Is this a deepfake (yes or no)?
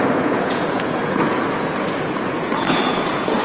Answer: yes